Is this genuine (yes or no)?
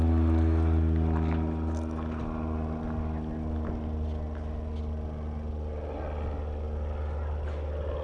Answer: yes